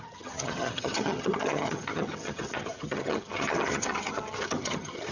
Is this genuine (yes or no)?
no